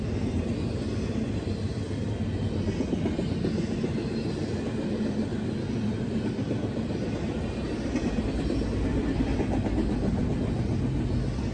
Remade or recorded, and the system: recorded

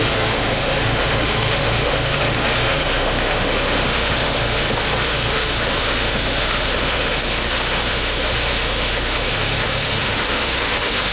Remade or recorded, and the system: remade, autoencoder, DAC-VAE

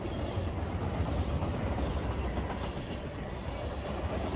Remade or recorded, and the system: recorded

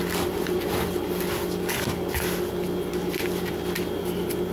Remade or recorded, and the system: recorded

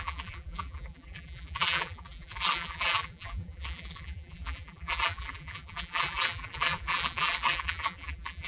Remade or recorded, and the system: remade, vocoder, BigVGAN v2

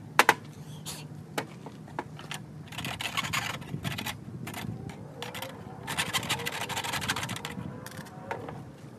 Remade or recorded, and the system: recorded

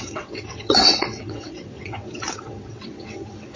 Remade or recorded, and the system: remade, vocoder, WaveNeXt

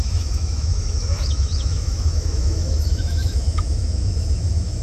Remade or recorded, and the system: remade, autoencoder, DAC-VAE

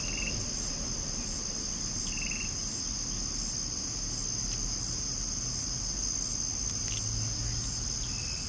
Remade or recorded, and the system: recorded